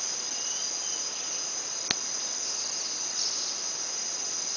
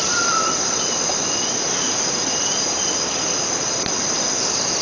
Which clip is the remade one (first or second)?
second